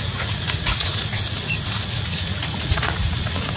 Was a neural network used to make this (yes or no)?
yes